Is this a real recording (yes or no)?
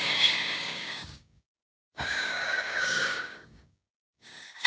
no